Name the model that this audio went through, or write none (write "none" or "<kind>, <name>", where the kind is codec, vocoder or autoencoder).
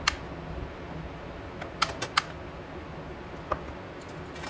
none